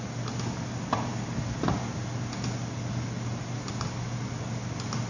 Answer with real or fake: real